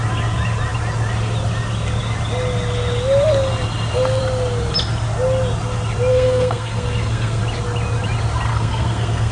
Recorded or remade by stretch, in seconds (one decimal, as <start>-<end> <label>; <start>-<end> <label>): 0.0-6.1 recorded; 6.1-7.4 remade; 7.4-8.5 recorded; 8.5-9.3 remade